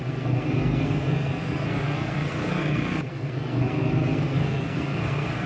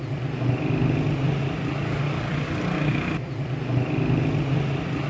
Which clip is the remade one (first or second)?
first